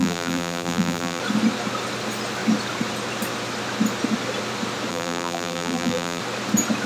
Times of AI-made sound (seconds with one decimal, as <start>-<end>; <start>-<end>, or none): 0.0-1.2; 4.9-6.2